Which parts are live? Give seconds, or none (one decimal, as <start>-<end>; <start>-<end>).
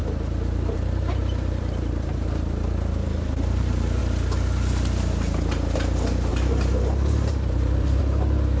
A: 4.0-6.3; 8.0-8.6